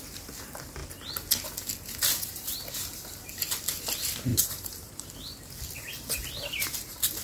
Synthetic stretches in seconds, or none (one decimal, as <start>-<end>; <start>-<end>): 4.3-5.1

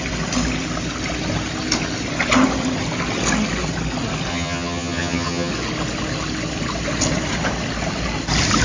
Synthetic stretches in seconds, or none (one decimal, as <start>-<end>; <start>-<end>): 4.3-5.5

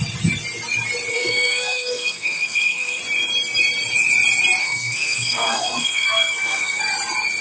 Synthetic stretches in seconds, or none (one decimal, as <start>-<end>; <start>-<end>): 1.1-3.0; 4.6-6.8

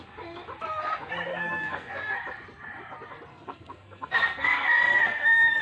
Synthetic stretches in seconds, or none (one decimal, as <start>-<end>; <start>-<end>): 1.3-2.2; 3.3-5.6